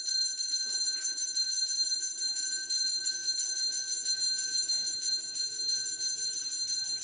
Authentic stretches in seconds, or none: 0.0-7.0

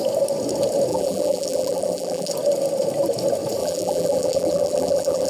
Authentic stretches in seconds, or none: 0.0-0.9; 2.3-3.6

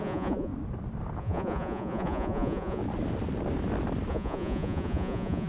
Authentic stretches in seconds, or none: 0.5-1.2; 2.8-4.1

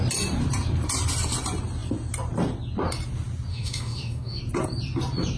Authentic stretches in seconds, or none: 0.0-3.5; 4.4-5.4

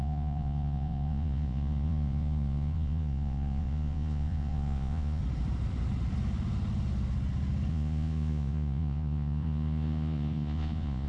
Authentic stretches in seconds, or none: 5.2-7.7

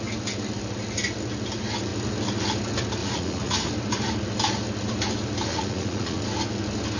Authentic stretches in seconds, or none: 0.0-3.0; 3.7-5.5; 6.2-7.0